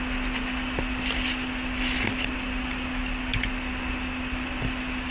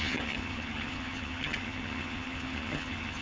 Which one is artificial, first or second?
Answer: second